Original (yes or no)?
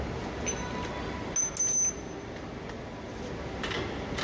yes